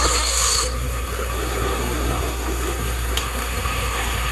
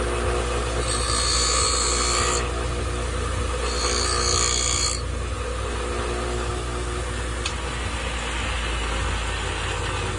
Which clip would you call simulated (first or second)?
first